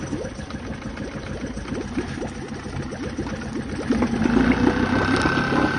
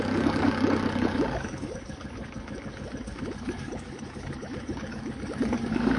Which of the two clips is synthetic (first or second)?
second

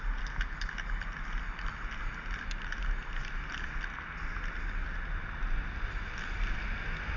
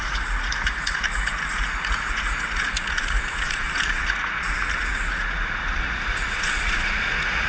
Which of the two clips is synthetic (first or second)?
second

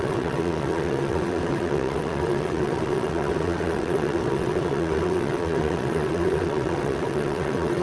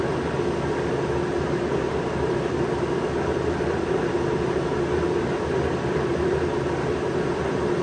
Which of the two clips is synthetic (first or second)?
first